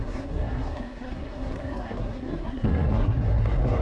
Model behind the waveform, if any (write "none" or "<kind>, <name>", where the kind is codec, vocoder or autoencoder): codec, SNAC